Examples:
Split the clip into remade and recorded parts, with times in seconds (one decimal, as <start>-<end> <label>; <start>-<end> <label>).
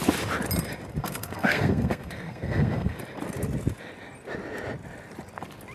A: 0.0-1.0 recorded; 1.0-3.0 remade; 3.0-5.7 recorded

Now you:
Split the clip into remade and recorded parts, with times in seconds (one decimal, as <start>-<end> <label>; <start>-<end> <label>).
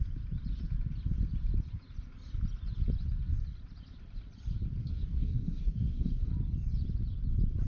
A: 0.0-4.8 recorded; 4.8-6.3 remade; 6.3-7.7 recorded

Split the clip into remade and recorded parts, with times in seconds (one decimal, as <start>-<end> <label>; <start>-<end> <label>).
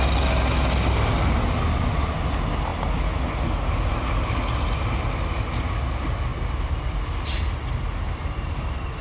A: 0.0-6.3 recorded; 6.3-6.9 remade; 6.9-9.0 recorded